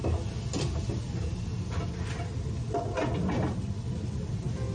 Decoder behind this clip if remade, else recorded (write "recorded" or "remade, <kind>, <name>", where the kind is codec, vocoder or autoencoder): recorded